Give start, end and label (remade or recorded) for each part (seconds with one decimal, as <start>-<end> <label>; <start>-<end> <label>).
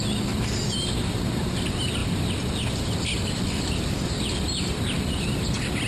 0.0-5.9 recorded